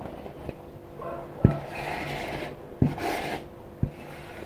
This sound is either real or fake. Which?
real